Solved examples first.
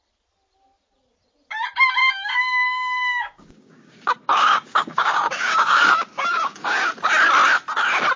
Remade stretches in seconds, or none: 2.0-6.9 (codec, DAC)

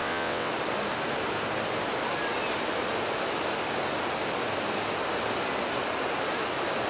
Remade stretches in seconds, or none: 0.0-0.5 (vocoder, WaveNeXt)

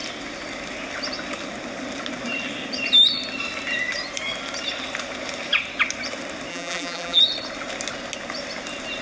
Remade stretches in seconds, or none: 6.5-7.2 (vocoder, BigVGAN v2)

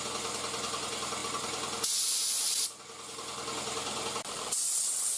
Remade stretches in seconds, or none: none

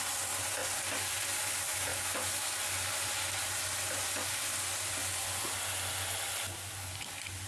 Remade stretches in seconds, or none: none

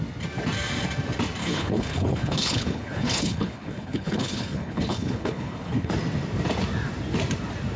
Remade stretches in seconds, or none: 1.4-5.9 (codec, HILCodec)

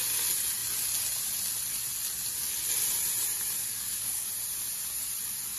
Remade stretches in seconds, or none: 3.6-4.3 (codec, DAC)